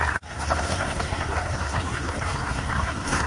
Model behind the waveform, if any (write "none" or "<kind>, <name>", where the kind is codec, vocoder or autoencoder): codec, SNAC